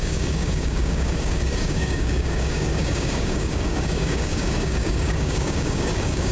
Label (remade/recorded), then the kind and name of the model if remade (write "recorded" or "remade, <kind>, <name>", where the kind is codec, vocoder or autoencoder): remade, codec, DAC